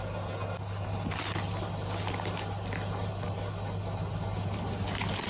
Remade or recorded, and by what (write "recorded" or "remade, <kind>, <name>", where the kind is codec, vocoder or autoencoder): recorded